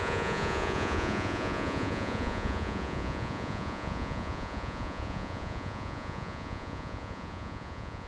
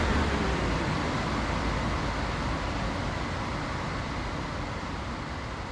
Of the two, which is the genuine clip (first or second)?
second